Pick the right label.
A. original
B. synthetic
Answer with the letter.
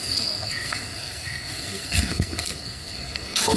B